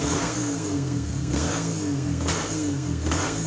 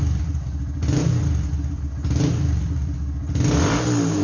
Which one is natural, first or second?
second